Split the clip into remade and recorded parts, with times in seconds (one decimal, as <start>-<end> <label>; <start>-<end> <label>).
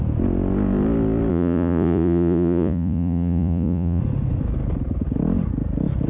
0.0-1.3 recorded; 1.3-4.0 remade; 4.0-6.1 recorded